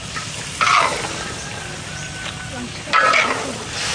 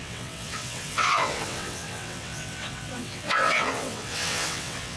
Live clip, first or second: first